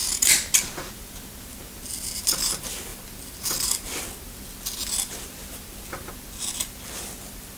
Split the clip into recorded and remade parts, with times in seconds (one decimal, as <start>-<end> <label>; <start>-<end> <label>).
0.0-7.6 recorded